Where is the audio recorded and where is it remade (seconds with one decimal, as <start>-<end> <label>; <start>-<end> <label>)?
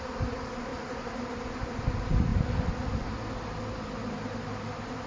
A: 0.0-0.7 recorded; 0.7-1.7 remade; 1.7-5.1 recorded